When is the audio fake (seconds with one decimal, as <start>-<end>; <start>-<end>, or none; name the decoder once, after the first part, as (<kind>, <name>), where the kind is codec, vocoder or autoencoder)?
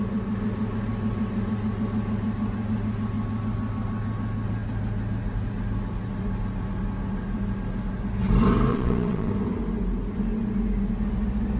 8.7-9.3 (vocoder, Vocos)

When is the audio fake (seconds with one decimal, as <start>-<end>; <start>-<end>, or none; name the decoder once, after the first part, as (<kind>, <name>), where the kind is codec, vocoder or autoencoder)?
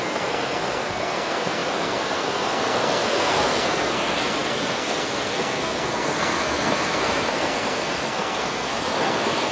0.0-9.5 (codec, SNAC)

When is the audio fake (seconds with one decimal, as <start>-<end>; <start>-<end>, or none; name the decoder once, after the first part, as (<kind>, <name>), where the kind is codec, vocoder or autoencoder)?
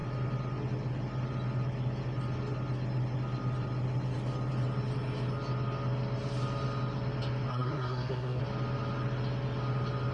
7.5-8.4 (codec, SNAC)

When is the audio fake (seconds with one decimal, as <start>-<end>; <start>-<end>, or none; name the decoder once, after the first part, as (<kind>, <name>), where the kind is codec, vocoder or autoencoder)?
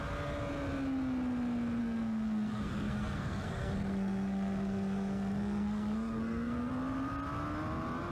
1.8-6.7 (codec, SNAC)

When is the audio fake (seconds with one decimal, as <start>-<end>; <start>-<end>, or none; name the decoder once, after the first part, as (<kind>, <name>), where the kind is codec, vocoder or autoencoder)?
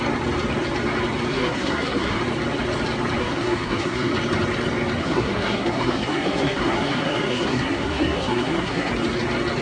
1.3-2.2 (codec, SNAC); 3.2-4.1; 5.0-8.9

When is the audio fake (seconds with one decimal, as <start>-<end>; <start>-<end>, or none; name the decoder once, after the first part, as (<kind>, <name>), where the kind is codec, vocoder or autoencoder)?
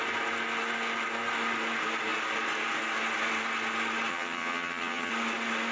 4.1-5.1 (vocoder, HiFi-GAN)